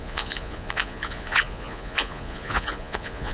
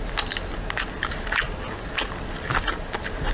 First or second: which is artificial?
first